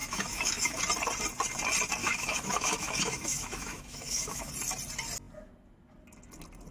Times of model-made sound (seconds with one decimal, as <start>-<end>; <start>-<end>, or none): 0.0-0.8; 2.0-4.5